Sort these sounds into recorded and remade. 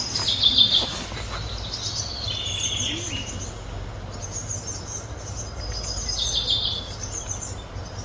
recorded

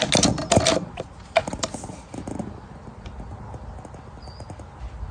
recorded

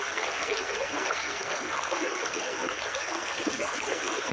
remade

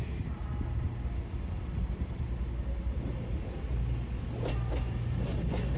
recorded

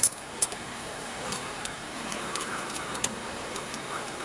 remade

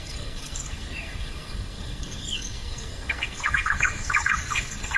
remade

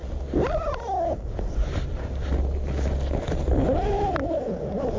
recorded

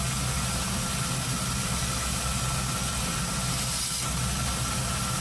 recorded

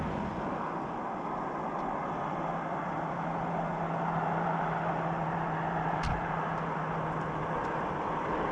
recorded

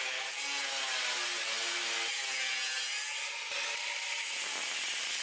recorded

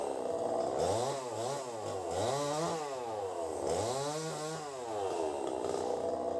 recorded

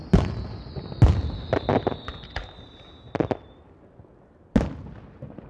recorded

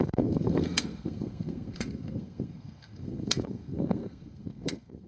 remade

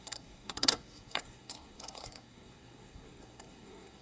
remade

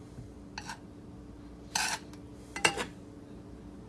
recorded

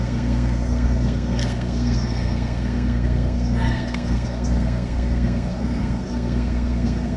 remade